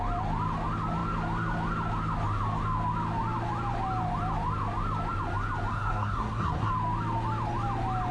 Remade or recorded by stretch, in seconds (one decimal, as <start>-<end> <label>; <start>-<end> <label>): 0.0-5.7 recorded; 5.7-6.7 remade; 6.7-8.1 recorded